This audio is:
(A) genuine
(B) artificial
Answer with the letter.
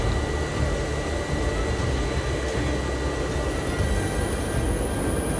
A